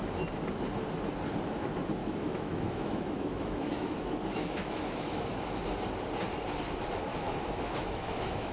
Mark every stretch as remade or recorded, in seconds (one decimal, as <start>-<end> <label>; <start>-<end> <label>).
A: 0.0-2.0 recorded; 2.0-5.6 remade; 5.6-7.1 recorded; 7.1-8.5 remade